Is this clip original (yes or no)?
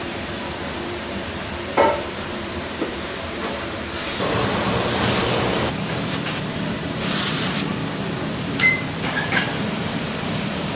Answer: no